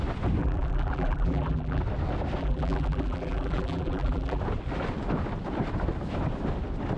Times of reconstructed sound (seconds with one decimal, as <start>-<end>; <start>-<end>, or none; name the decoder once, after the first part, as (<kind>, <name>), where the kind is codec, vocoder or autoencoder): 0.4-1.8 (vocoder, BigVGAN v2); 2.4-4.4